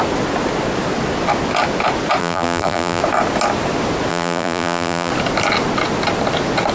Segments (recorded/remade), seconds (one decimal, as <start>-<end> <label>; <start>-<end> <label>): 0.0-2.2 recorded; 2.2-3.0 remade; 3.0-4.1 recorded; 4.1-5.1 remade; 5.1-6.7 recorded